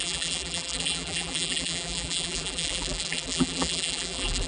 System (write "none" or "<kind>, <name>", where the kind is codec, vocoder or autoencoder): vocoder, BigVGAN v2